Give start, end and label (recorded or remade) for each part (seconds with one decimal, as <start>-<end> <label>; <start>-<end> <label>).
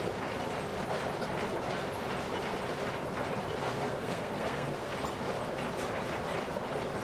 0.0-3.6 recorded; 3.6-4.9 remade; 4.9-7.0 recorded